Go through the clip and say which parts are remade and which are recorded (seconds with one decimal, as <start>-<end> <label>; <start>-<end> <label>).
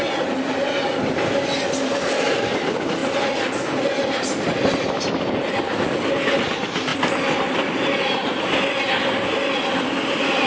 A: 0.0-10.5 recorded